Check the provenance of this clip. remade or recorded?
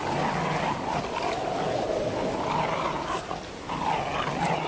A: recorded